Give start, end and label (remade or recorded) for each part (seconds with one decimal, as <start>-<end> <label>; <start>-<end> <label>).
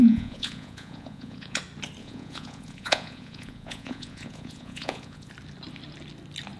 0.0-1.6 remade; 1.6-2.0 recorded; 2.0-5.3 remade; 5.3-6.6 recorded